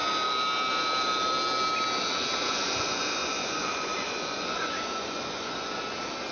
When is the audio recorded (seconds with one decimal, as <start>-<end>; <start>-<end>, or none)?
0.0-2.0; 5.8-6.3